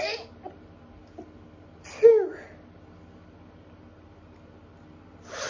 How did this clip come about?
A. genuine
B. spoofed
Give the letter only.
A